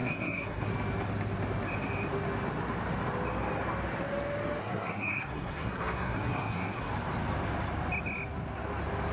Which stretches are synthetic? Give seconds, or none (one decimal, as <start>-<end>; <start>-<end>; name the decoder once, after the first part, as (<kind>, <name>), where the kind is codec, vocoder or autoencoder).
0.0-0.7 (codec, SNAC); 4.6-6.9